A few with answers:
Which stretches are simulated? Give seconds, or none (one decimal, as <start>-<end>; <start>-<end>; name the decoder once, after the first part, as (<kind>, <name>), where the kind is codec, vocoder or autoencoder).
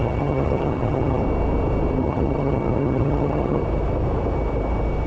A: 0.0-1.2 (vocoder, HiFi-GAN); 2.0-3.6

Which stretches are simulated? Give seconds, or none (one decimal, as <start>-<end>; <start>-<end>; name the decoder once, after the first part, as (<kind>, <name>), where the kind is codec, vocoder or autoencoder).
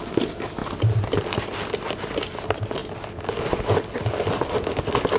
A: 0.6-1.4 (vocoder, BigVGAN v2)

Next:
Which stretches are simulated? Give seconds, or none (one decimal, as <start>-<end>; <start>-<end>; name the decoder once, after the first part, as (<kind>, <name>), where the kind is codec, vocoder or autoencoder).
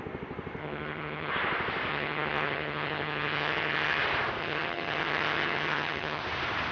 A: 0.6-1.3 (vocoder, HiFi-GAN); 1.9-4.0; 4.4-6.2